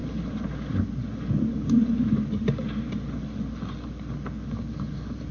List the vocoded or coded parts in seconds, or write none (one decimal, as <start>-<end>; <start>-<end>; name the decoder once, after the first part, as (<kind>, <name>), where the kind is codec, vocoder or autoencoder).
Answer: none